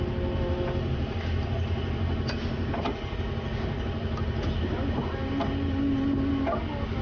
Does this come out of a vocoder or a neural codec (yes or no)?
no